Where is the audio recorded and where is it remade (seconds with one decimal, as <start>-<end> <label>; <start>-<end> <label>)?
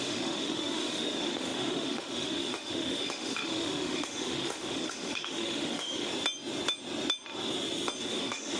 0.0-6.1 remade; 6.1-8.0 recorded; 8.0-8.6 remade